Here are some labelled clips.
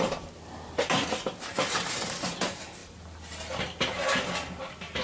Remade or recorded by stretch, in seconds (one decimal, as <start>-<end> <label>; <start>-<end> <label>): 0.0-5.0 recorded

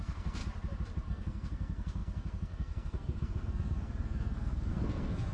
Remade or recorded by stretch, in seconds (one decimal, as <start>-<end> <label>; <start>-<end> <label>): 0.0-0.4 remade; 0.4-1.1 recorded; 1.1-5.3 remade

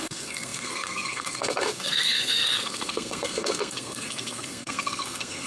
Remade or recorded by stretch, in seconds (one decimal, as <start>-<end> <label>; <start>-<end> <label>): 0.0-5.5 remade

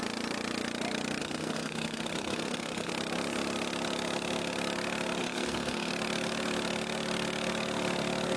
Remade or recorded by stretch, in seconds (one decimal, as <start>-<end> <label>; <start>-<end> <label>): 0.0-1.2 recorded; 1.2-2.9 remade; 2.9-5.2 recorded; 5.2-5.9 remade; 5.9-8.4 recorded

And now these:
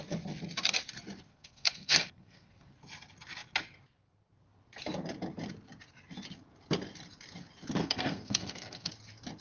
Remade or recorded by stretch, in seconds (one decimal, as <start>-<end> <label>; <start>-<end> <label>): 0.0-1.3 recorded; 1.3-2.7 remade; 2.7-7.8 recorded; 7.8-8.9 remade; 8.9-9.4 recorded